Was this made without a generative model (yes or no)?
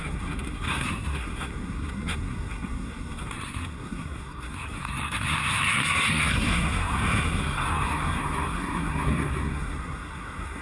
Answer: no